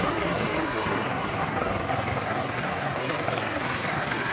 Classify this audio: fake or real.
fake